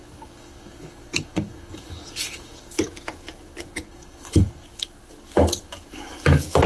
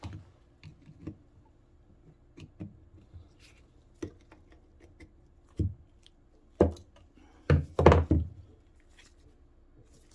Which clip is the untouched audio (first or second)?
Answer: second